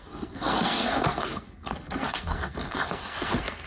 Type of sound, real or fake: fake